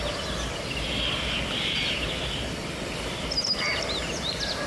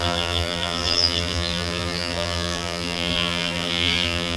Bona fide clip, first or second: first